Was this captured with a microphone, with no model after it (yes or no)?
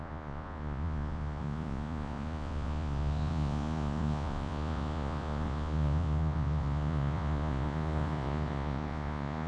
no